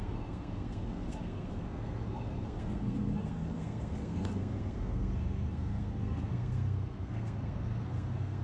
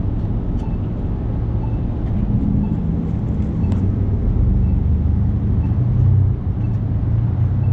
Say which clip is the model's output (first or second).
first